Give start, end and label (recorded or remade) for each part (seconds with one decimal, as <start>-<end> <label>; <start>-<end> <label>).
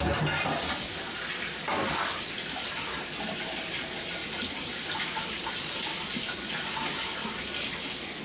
0.0-8.2 recorded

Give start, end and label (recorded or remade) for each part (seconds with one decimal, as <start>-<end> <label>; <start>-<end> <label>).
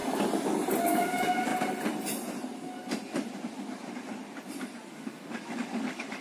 0.0-0.8 recorded; 0.8-1.5 remade; 1.5-4.9 recorded; 4.9-6.2 remade